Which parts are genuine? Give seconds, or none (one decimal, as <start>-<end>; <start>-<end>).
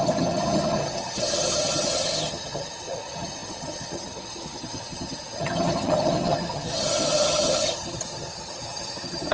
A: none